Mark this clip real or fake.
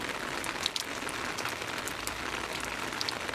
real